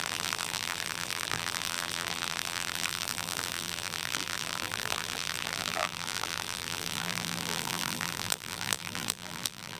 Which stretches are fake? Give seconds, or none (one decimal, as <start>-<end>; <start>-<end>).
0.0-9.8